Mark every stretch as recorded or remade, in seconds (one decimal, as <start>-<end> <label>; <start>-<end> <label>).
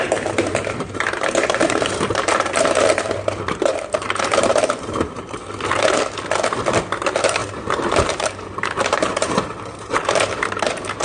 0.0-5.4 remade; 5.4-7.0 recorded; 7.0-11.0 remade